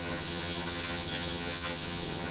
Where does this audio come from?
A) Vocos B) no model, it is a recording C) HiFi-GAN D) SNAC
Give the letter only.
C